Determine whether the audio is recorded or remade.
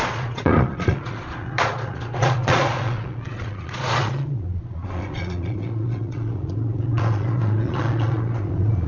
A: remade